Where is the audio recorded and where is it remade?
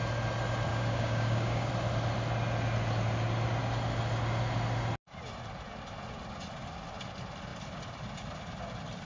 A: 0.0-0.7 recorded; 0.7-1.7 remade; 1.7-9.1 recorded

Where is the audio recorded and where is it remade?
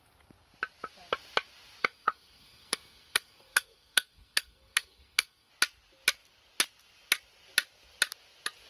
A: 0.0-1.8 recorded; 1.8-5.5 remade; 5.5-8.7 recorded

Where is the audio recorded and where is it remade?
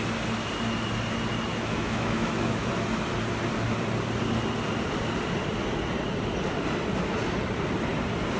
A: 0.0-1.5 recorded; 1.5-2.7 remade; 2.7-8.4 recorded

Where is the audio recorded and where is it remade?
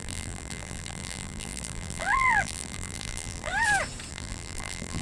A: 0.0-3.5 remade; 3.5-4.1 recorded; 4.1-5.0 remade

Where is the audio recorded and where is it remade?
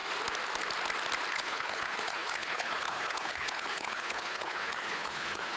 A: 0.0-1.3 recorded; 1.3-5.6 remade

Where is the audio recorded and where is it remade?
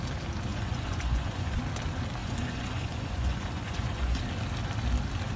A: 0.0-0.5 recorded; 0.5-1.6 remade; 1.6-2.2 recorded; 2.2-4.2 remade; 4.2-5.4 recorded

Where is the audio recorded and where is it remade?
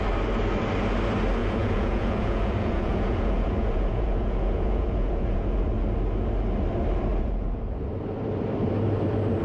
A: 0.0-1.4 recorded; 1.4-5.6 remade; 5.6-7.1 recorded; 7.1-7.6 remade; 7.6-9.4 recorded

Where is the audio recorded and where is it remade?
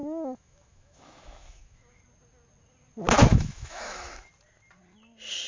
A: 0.0-2.0 remade; 2.0-3.3 recorded; 3.3-4.3 remade; 4.3-5.5 recorded